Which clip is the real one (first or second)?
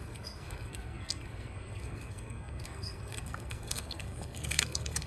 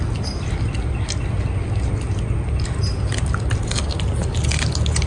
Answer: second